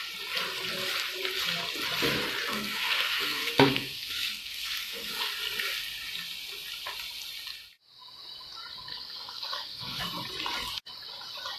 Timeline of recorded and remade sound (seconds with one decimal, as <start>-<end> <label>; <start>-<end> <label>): 0.0-2.5 recorded; 2.5-5.1 remade; 5.1-8.9 recorded; 8.9-10.0 remade; 10.0-11.6 recorded